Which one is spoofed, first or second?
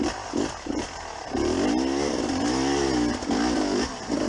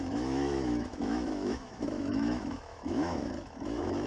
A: second